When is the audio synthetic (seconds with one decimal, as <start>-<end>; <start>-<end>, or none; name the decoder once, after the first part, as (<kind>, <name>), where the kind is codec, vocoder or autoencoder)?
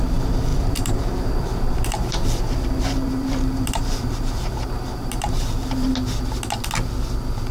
0.0-5.9 (vocoder, BigVGAN v2)